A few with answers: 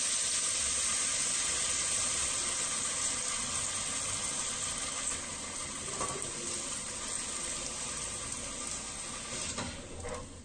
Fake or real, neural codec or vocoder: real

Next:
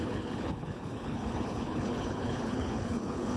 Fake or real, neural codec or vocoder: fake, codec, HILCodec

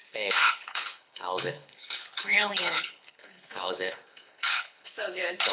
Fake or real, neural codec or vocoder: fake, codec, HILCodec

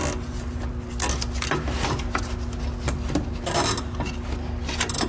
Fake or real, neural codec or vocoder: real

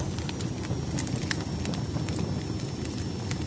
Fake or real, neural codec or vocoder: real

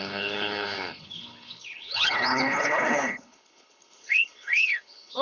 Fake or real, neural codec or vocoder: fake, codec, HILCodec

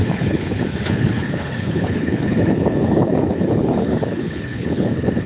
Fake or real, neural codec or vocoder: fake, codec, HILCodec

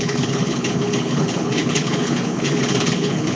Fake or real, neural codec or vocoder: fake, codec, HILCodec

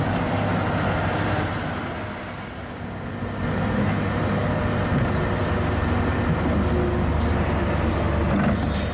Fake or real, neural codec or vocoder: real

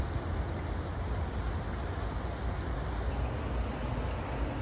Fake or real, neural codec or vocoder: real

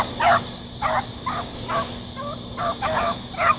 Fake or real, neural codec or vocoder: real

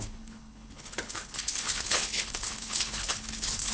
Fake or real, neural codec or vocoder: fake, codec, HILCodec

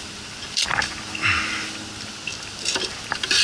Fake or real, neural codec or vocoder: real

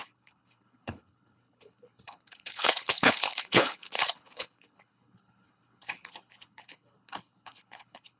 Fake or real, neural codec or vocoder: fake, codec, HILCodec